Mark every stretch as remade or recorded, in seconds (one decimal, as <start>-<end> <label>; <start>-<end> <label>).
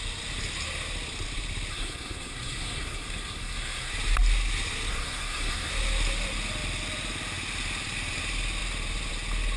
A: 0.0-1.7 recorded; 1.7-3.9 remade; 3.9-4.9 recorded; 4.9-5.7 remade; 5.7-9.6 recorded